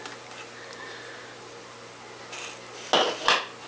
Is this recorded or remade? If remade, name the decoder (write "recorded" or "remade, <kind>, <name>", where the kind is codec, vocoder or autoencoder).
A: recorded